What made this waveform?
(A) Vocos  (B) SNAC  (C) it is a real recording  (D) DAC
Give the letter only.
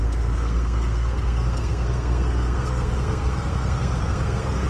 B